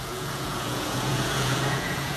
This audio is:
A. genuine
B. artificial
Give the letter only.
B